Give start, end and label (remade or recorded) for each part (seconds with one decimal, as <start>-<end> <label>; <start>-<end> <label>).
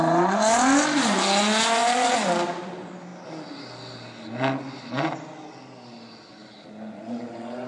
0.0-7.7 recorded